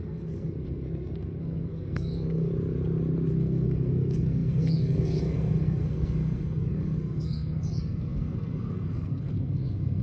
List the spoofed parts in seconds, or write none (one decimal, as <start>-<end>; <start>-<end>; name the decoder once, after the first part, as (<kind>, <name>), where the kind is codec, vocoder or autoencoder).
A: 0.0-2.5 (codec, SNAC); 3.3-10.0